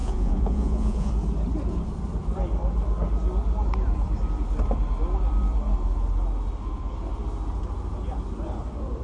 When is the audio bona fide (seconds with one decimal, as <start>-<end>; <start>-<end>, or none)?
1.1-9.0